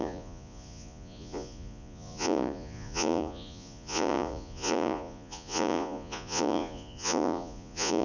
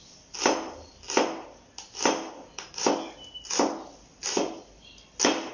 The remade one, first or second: first